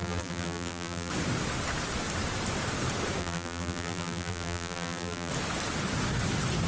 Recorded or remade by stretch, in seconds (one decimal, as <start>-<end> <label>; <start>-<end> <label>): 0.0-1.1 remade; 1.1-3.2 recorded; 3.2-5.3 remade; 5.3-6.7 recorded